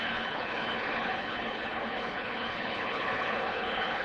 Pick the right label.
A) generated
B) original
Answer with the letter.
A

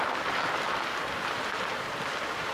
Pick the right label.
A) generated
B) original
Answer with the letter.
B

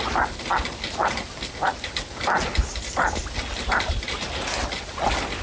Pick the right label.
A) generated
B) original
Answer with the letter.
B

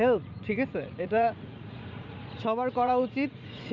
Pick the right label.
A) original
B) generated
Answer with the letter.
B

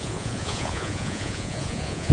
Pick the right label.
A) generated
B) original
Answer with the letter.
A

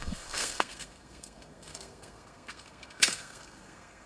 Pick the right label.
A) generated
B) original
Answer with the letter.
A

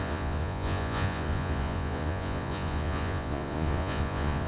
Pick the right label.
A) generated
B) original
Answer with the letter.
A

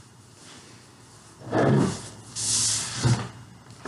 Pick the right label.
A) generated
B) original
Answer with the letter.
B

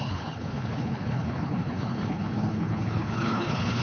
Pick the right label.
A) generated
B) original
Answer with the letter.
A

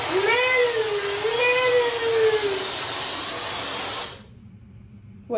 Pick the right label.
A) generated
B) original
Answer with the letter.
B